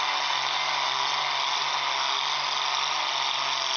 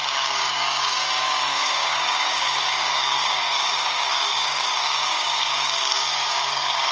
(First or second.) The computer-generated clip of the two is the second